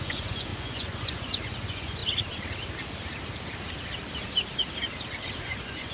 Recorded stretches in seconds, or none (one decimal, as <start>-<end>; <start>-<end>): 2.0-5.4